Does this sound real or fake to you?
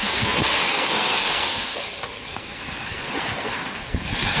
fake